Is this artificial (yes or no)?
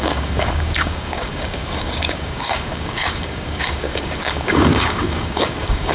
yes